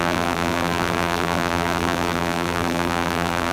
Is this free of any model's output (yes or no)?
no